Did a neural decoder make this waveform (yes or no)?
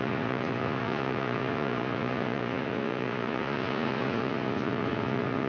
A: yes